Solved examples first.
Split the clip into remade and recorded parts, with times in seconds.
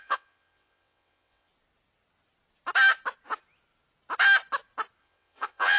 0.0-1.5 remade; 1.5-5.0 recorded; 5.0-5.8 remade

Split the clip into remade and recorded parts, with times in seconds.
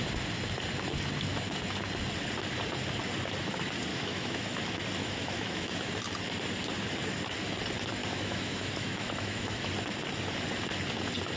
0.0-3.9 recorded; 3.9-4.6 remade; 4.6-5.0 recorded; 5.0-5.9 remade; 5.9-8.0 recorded; 8.0-9.7 remade; 9.7-11.4 recorded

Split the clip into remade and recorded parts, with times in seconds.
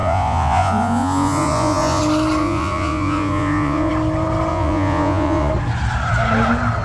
0.0-2.0 remade; 2.0-2.4 recorded; 2.4-3.9 remade; 3.9-4.5 recorded; 4.5-5.5 remade; 5.5-6.8 recorded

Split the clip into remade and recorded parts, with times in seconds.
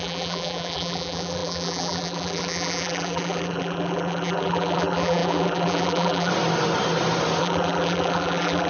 0.0-6.3 remade; 6.3-7.4 recorded; 7.4-8.7 remade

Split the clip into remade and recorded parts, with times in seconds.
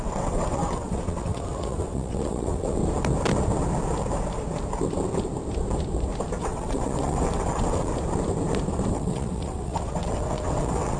0.0-2.8 remade; 2.8-6.4 recorded; 6.4-7.9 remade; 7.9-8.9 recorded; 8.9-11.0 remade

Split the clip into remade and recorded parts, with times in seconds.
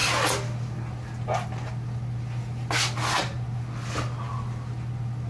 0.0-5.3 recorded